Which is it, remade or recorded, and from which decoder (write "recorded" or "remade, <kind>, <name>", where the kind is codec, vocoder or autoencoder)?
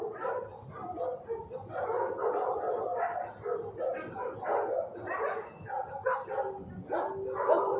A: recorded